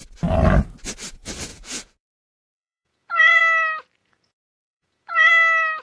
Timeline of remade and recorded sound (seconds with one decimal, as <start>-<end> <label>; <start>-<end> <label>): 0.0-1.5 recorded; 1.5-3.4 remade; 3.4-4.0 recorded; 4.0-5.3 remade; 5.3-5.8 recorded